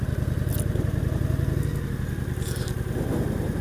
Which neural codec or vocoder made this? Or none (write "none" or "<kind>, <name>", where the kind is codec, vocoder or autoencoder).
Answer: none